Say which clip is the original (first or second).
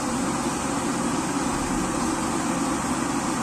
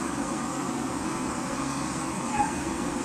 first